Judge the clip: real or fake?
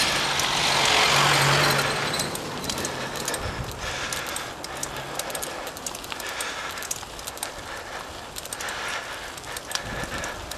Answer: real